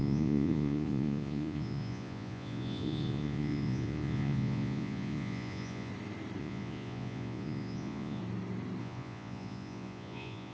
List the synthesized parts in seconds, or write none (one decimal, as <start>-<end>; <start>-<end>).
0.0-5.9; 6.4-8.2; 8.8-10.5